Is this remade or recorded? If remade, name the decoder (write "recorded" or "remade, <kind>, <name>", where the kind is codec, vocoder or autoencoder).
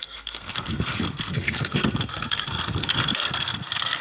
remade, codec, SNAC